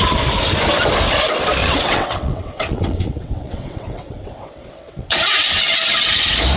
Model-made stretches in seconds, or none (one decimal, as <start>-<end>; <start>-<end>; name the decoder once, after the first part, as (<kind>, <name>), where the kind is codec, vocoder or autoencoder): 1.6-5.6 (vocoder, WaveNeXt)

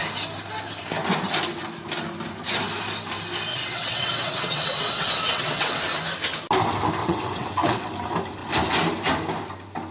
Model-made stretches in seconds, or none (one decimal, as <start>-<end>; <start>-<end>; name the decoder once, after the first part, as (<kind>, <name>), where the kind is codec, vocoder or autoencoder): 3.5-5.8 (vocoder, WaveNeXt); 7.0-7.9

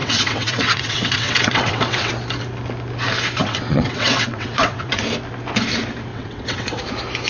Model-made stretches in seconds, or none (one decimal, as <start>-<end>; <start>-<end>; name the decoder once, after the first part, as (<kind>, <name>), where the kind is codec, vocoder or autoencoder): 0.0-2.1 (vocoder, WaveNeXt); 3.4-5.0; 6.1-6.8

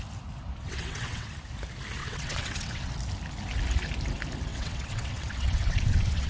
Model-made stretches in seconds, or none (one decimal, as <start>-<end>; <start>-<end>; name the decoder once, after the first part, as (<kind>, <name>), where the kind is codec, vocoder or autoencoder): 0.6-1.3 (vocoder, WaveNeXt); 2.0-2.9; 4.5-6.3

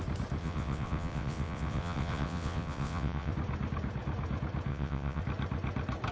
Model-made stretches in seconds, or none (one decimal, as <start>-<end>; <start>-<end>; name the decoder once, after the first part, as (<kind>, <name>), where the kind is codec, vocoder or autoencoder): 0.4-3.3 (vocoder, WaveNeXt); 4.7-5.2

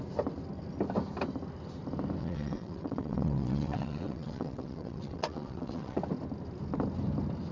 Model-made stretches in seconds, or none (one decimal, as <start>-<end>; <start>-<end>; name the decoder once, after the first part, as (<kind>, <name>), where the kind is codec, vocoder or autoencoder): 2.2-6.0 (vocoder, WaveNeXt)

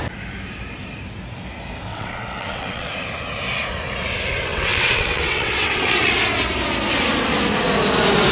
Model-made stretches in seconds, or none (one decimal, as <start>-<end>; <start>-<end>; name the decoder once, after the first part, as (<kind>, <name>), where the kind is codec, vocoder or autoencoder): 1.9-2.9 (vocoder, WaveNeXt); 4.5-6.1